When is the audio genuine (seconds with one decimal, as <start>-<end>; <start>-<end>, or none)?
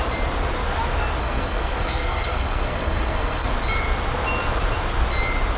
0.0-1.2; 3.5-5.6